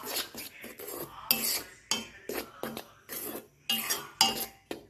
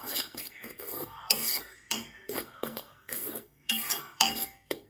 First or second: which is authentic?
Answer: first